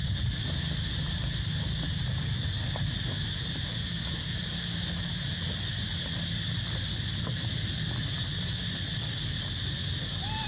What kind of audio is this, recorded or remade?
recorded